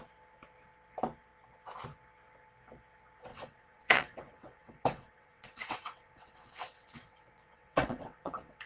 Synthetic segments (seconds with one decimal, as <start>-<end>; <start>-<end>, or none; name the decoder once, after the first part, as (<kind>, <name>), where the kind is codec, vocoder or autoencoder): 3.3-8.7 (vocoder, WaveNeXt)